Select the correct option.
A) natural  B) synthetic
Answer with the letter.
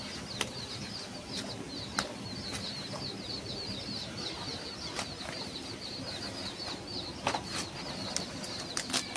A